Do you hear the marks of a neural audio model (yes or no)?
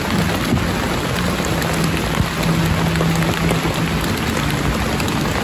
no